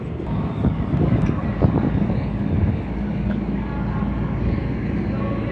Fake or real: fake